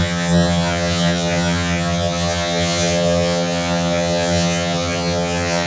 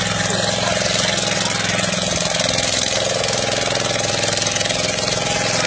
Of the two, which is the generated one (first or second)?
first